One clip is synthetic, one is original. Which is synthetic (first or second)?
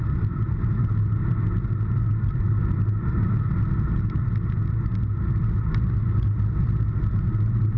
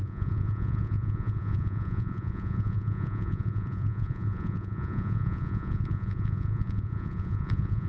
second